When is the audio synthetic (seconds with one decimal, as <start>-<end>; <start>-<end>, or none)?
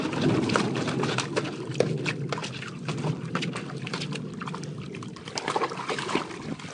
none